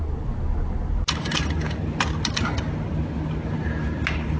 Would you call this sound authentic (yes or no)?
yes